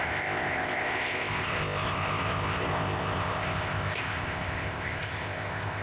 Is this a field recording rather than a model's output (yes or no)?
no